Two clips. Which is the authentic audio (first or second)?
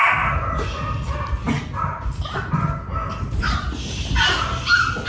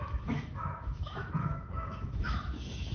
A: first